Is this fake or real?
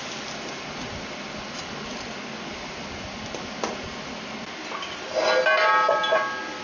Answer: real